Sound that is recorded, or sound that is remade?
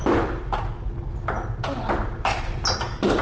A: recorded